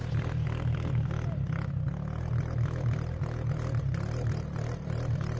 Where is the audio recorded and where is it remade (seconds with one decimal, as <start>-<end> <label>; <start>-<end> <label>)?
0.0-5.4 recorded